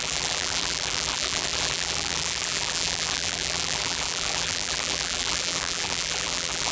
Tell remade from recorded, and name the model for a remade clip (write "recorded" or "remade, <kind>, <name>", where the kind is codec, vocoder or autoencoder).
remade, vocoder, BigVGAN v2